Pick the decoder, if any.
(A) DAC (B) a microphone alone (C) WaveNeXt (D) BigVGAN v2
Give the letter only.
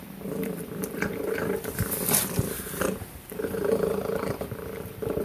D